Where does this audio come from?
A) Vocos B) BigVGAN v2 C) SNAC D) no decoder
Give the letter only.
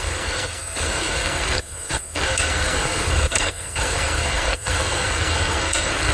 C